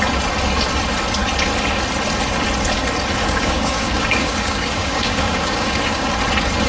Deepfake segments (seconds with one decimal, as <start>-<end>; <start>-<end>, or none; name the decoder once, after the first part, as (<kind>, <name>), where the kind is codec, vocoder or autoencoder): 3.2-6.1 (codec, DAC)